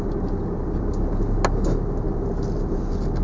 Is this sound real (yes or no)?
yes